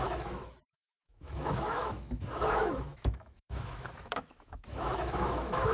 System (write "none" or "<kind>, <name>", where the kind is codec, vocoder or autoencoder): autoencoder, DAC-VAE